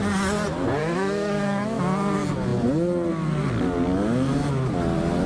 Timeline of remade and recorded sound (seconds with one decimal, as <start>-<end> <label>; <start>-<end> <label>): 0.0-0.8 recorded; 0.8-1.8 remade; 1.8-5.3 recorded